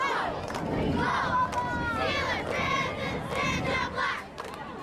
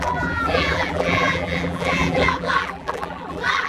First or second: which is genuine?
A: first